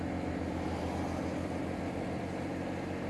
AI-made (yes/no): no